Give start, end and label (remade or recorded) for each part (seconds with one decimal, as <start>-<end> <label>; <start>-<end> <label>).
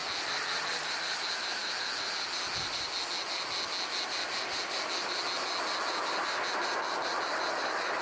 0.0-8.0 recorded